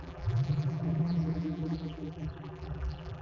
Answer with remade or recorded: remade